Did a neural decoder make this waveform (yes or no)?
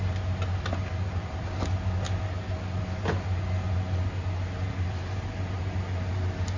no